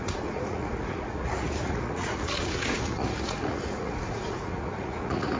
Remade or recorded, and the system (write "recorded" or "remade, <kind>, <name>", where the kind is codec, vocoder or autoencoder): remade, vocoder, Vocos